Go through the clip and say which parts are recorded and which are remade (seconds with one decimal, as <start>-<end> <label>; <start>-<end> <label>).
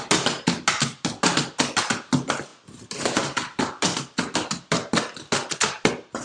0.0-6.2 recorded